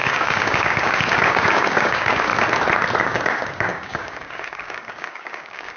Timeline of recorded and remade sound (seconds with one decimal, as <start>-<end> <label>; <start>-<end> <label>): 0.0-2.3 remade; 2.3-3.0 recorded; 3.0-5.8 remade